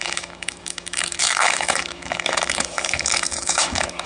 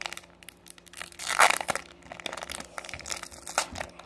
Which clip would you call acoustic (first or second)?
second